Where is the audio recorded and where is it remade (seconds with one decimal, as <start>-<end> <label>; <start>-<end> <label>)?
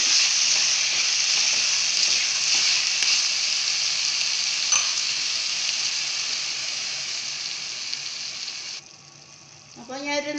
0.0-4.8 recorded; 4.8-5.6 remade; 5.6-6.6 recorded; 6.6-7.2 remade; 7.2-10.4 recorded